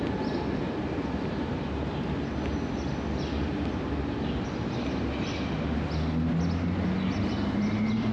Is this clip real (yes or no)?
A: yes